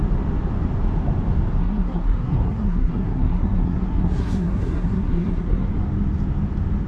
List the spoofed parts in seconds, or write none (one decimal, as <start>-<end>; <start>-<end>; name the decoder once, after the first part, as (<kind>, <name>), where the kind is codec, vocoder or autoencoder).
1.6-5.7 (codec, SNAC)